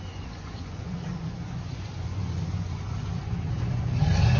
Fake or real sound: fake